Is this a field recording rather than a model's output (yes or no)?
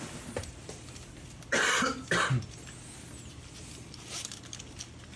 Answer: yes